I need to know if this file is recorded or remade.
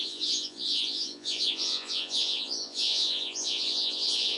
remade